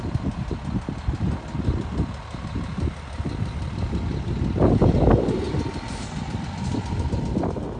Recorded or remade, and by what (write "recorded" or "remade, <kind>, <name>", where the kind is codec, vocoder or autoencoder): recorded